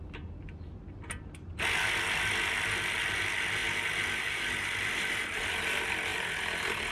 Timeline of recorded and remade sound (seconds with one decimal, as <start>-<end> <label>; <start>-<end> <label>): 0.0-3.6 recorded; 3.6-5.5 remade; 5.5-6.9 recorded